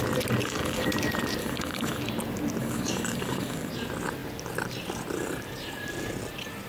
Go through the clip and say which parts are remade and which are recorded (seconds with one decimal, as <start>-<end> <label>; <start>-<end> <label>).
0.0-0.4 recorded; 0.4-0.9 remade; 0.9-1.4 recorded; 1.4-2.0 remade; 2.0-2.6 recorded; 2.6-3.7 remade; 3.7-6.7 recorded